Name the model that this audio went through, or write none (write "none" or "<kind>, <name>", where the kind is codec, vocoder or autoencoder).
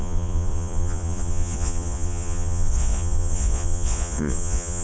vocoder, Vocos